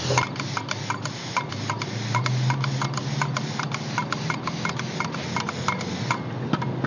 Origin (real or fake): real